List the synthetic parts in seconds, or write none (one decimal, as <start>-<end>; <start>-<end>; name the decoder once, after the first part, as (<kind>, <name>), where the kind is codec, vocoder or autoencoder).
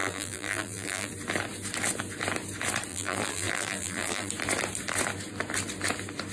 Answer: 0.0-1.1 (vocoder, BigVGAN v2); 2.9-4.3